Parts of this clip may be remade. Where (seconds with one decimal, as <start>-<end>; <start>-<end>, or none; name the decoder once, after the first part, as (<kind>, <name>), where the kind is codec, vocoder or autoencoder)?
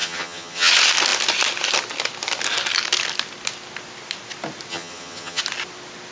0.0-0.7 (vocoder, HiFi-GAN); 4.7-5.4